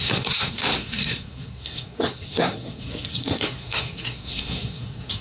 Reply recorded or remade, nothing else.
remade